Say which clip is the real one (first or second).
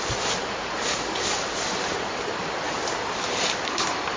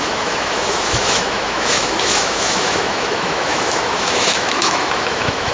first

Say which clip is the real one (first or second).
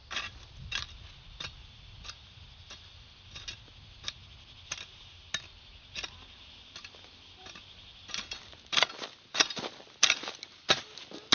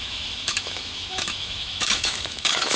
first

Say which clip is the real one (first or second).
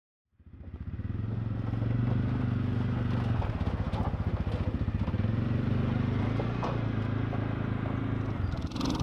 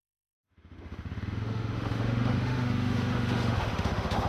first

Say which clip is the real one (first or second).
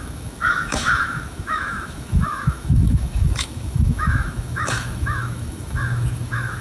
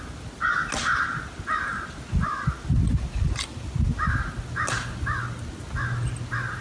second